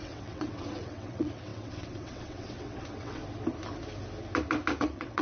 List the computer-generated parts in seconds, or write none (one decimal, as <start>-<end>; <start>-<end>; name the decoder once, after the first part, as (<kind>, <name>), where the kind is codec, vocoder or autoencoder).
0.0-3.2 (vocoder, WaveNeXt); 4.8-5.2